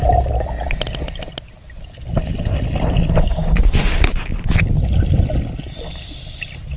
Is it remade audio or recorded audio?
recorded